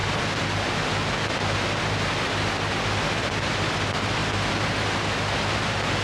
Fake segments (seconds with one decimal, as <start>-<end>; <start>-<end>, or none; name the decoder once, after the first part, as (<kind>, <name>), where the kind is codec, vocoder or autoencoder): none